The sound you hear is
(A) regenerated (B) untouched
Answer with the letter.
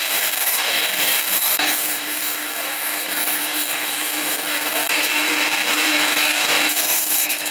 A